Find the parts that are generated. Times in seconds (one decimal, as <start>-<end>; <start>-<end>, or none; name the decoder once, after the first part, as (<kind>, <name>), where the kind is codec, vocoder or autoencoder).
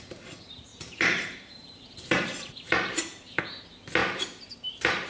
0.7-3.4 (vocoder, BigVGAN v2); 4.0-5.1